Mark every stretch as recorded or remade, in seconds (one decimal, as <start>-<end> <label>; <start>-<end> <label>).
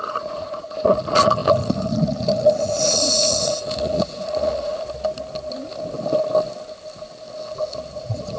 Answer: 0.0-4.7 remade; 4.7-8.0 recorded; 8.0-8.4 remade